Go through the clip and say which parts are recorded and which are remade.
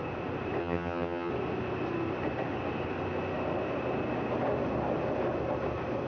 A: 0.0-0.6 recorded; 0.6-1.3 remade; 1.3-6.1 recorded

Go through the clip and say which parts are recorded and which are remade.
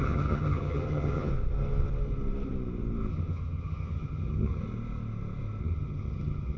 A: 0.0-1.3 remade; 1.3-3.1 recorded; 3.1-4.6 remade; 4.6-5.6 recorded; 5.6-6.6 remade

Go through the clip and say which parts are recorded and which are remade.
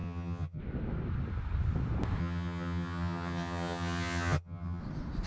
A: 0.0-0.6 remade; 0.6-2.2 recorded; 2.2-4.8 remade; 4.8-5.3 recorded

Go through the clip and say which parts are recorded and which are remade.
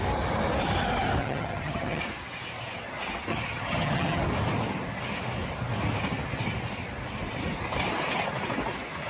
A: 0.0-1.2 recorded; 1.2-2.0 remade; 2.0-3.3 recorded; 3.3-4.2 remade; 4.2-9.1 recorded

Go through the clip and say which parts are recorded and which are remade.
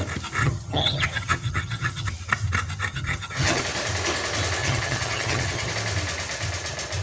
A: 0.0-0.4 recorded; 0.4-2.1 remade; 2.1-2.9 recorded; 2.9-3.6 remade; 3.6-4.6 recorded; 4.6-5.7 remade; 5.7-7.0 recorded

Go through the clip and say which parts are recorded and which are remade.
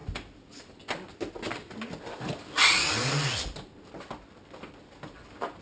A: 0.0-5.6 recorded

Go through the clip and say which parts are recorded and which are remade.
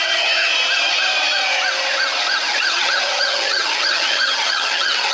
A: 0.0-0.5 remade; 0.5-2.7 recorded; 2.7-5.1 remade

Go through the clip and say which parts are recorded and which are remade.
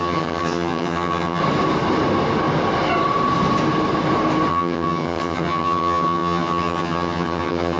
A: 0.0-1.4 remade; 1.4-4.5 recorded; 4.5-7.8 remade